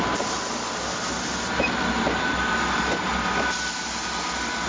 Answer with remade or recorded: recorded